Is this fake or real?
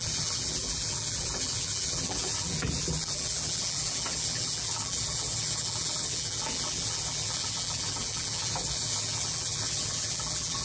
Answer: fake